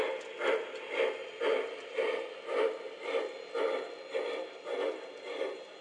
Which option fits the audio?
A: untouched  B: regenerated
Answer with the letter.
A